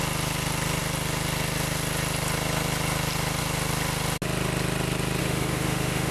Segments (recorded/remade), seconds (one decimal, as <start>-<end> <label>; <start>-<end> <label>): 0.0-5.2 recorded; 5.2-6.1 remade

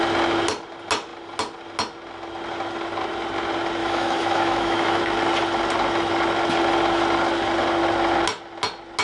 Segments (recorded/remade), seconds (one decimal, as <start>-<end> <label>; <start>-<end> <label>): 0.0-3.8 recorded; 3.8-5.0 remade; 5.0-9.0 recorded

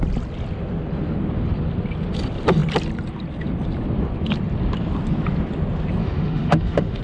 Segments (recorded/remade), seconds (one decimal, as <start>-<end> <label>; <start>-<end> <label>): 0.0-6.0 recorded; 6.0-7.0 remade

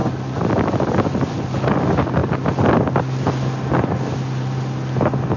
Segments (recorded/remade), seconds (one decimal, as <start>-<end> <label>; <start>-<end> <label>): 0.0-5.4 recorded

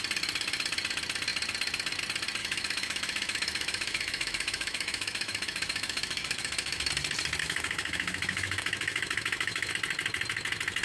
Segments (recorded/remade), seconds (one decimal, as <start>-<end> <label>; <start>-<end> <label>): 0.0-2.4 recorded; 2.4-6.9 remade; 6.9-7.4 recorded; 7.4-9.7 remade; 9.7-10.8 recorded

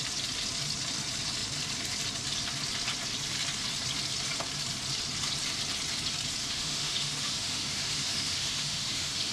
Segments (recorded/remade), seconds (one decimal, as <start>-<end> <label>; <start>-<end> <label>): 0.0-6.4 recorded; 6.4-9.3 remade

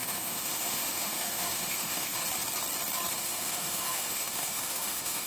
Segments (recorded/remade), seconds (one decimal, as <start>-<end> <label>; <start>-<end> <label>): 0.0-2.2 remade; 2.2-3.1 recorded; 3.1-5.3 remade